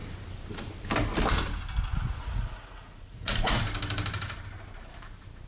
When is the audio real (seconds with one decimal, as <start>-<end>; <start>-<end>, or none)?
0.0-2.2; 3.6-5.5